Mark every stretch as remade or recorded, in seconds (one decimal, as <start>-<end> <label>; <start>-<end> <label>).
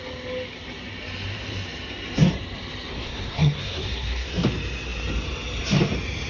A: 0.0-2.9 recorded; 2.9-4.3 remade; 4.3-6.3 recorded